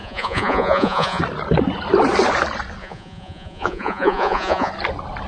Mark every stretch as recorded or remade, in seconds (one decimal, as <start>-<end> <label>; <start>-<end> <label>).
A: 0.0-1.2 remade; 1.2-2.8 recorded; 2.8-4.7 remade; 4.7-5.3 recorded